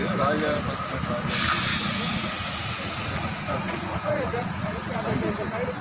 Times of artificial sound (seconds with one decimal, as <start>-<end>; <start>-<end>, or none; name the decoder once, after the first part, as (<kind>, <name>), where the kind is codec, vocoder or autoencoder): 1.7-5.0 (vocoder, Vocos)